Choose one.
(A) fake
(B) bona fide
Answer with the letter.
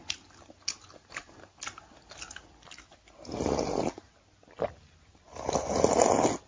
B